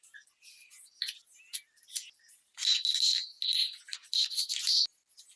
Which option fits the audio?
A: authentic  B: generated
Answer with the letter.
A